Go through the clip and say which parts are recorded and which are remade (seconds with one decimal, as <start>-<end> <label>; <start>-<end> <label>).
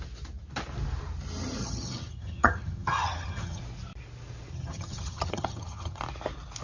0.0-1.6 recorded; 1.6-3.6 remade; 3.6-4.5 recorded; 4.5-6.0 remade; 6.0-6.6 recorded